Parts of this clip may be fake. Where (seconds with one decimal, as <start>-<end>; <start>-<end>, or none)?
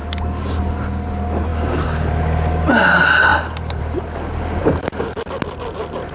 none